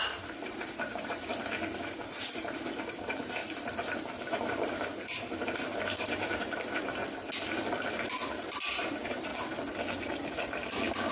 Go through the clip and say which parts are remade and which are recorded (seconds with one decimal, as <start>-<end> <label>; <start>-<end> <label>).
0.0-1.3 remade; 1.3-2.0 recorded; 2.0-7.0 remade; 7.0-7.9 recorded; 7.9-9.3 remade; 9.3-11.1 recorded